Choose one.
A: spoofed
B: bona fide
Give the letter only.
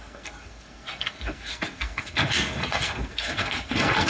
A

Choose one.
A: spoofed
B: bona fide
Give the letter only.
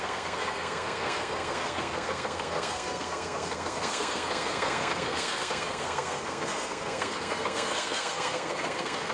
A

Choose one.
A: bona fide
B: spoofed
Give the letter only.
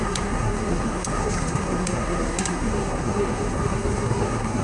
B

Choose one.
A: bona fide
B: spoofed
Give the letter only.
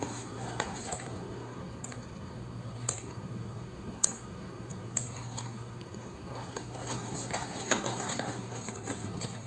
B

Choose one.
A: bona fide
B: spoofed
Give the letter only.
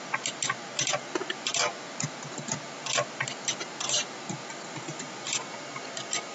A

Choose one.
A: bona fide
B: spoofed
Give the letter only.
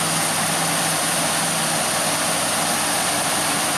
A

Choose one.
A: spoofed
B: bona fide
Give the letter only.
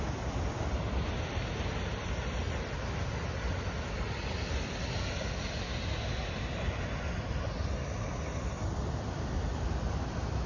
B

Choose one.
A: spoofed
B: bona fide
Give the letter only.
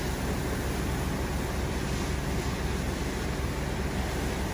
B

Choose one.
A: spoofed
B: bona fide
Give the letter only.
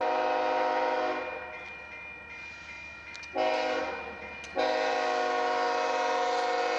B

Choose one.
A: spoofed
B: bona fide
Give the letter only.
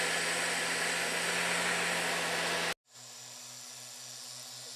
B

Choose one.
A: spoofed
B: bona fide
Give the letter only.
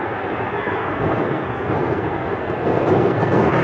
A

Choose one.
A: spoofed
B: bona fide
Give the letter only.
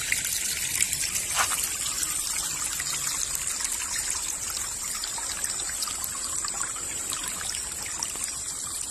B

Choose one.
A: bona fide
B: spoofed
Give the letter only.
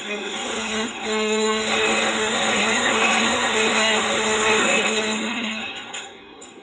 B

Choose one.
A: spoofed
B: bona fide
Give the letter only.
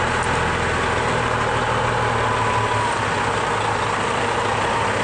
B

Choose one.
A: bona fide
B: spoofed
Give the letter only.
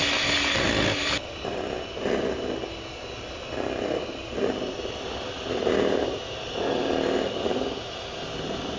A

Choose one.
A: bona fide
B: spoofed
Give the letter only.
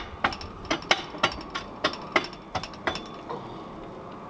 A